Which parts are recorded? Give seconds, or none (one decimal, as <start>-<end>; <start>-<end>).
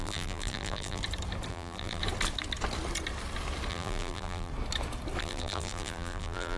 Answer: 1.0-1.5; 2.0-3.7; 4.5-5.2